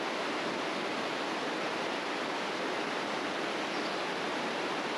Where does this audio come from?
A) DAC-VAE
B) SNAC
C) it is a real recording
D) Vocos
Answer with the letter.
C